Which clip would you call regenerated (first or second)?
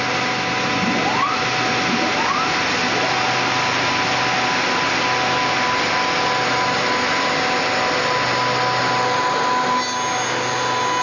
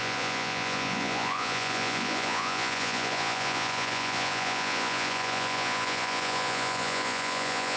second